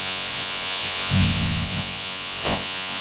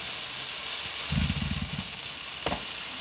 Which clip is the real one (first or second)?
second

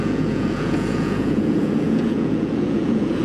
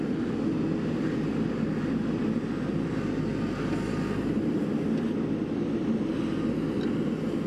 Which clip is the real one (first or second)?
second